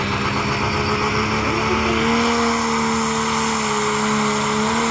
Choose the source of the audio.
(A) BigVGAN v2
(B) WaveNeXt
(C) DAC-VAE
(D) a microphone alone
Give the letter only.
D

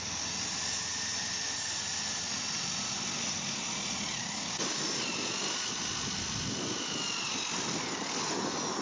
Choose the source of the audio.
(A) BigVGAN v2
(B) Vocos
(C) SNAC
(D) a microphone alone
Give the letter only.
D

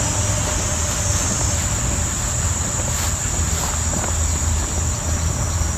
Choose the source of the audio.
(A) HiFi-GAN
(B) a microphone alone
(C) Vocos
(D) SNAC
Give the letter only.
B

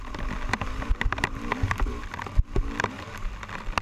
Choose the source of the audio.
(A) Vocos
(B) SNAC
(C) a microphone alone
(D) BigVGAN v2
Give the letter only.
C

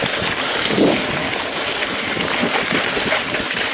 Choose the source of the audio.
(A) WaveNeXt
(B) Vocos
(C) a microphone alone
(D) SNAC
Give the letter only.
C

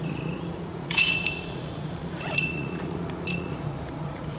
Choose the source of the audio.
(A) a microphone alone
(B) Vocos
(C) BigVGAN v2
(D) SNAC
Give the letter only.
B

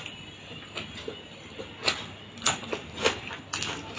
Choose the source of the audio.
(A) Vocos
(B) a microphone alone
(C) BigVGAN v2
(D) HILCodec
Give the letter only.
B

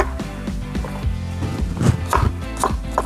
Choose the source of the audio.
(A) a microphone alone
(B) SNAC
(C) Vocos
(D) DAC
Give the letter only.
A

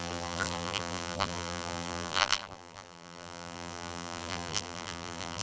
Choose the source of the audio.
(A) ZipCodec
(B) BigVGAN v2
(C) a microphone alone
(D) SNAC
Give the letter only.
B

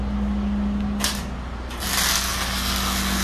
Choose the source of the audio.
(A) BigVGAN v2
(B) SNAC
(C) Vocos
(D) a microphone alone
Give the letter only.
D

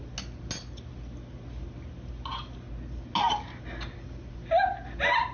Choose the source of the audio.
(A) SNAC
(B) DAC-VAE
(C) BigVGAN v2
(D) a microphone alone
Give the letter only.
D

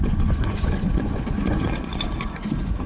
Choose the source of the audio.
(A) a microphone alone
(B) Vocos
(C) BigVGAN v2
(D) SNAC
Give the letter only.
B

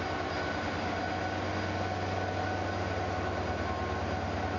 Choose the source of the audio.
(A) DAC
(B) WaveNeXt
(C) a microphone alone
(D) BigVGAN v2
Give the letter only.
C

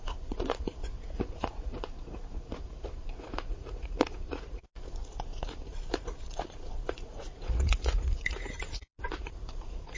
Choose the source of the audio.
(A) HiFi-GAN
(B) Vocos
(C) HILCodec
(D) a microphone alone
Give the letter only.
B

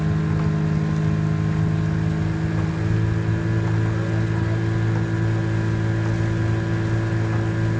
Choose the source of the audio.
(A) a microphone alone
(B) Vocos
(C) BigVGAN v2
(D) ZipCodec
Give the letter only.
A